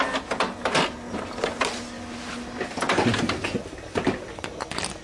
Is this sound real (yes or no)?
yes